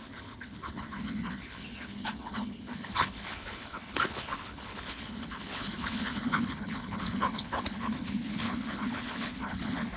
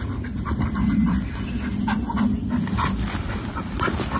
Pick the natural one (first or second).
second